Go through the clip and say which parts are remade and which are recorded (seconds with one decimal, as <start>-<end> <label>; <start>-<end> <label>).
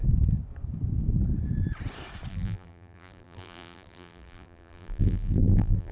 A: 0.0-2.3 recorded; 2.3-5.9 remade